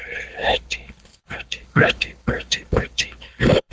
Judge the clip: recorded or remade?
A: remade